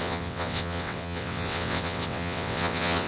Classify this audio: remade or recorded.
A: remade